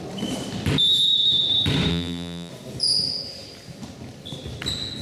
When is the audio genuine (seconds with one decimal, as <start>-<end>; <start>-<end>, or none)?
0.0-1.9; 2.5-5.0